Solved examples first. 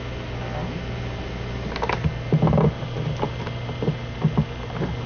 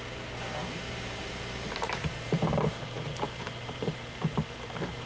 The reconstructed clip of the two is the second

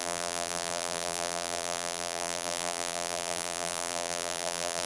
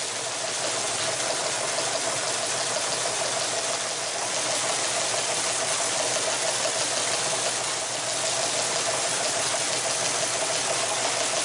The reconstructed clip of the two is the first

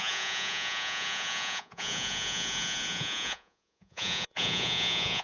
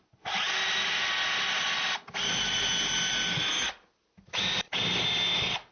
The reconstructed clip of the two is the first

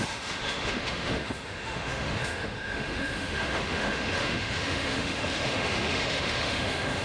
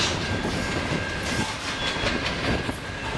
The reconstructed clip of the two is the first